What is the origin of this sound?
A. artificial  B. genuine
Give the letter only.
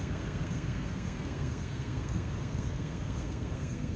A